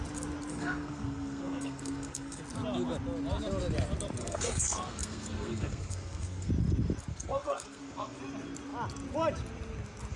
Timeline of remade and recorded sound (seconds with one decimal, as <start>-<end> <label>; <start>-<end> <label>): 0.0-0.5 recorded; 0.5-2.4 remade; 2.4-4.2 recorded; 4.2-6.5 remade; 6.5-7.1 recorded; 7.1-8.2 remade; 8.2-10.2 recorded